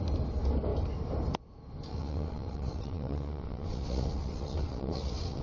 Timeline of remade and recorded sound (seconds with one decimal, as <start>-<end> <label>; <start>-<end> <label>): 0.0-1.9 recorded; 1.9-5.4 remade